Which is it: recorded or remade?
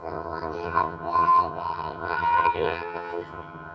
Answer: remade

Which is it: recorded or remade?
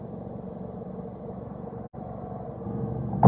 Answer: recorded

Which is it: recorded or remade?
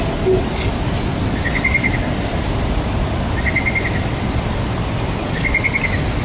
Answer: recorded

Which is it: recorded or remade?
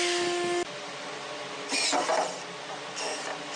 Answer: recorded